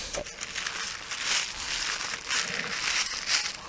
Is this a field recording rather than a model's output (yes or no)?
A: yes